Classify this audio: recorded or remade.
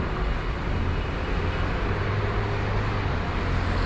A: recorded